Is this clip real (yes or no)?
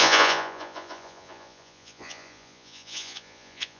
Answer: no